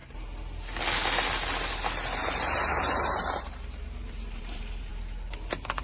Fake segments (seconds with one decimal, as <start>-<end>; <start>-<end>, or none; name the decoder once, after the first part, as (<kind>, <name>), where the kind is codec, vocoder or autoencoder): 2.8-4.9 (vocoder, BigVGAN v2)